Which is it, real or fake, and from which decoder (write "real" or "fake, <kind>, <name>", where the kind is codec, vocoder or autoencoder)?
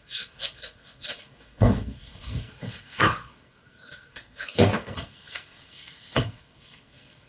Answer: fake, codec, SNAC